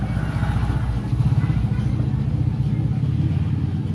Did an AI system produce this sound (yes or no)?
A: no